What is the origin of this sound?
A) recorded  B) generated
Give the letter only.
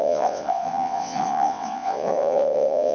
B